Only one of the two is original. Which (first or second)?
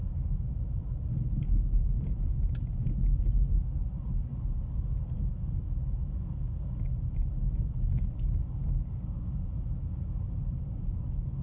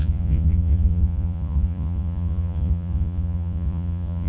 first